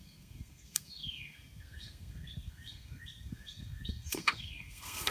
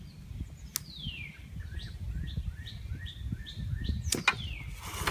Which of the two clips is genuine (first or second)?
second